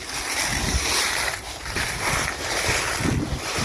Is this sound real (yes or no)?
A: yes